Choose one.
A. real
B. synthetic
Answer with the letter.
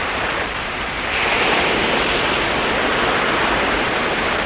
A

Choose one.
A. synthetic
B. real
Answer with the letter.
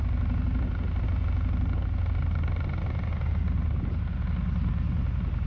B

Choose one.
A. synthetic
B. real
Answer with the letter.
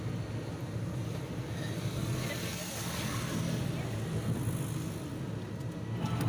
B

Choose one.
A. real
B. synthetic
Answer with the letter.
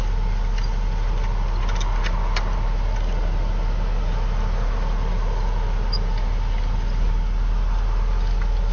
A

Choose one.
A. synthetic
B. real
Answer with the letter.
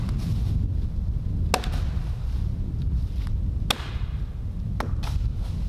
B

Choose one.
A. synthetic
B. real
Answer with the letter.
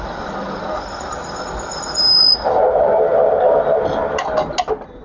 B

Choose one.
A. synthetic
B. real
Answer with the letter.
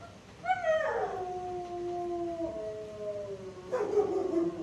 B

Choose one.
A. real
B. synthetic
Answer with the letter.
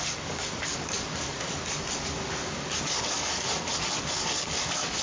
B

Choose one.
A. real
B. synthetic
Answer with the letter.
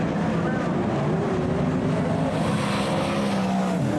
A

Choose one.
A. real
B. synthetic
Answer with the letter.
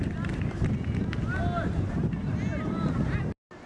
A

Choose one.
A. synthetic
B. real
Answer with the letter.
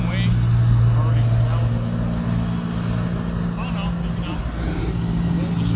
B